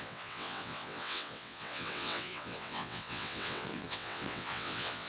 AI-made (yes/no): yes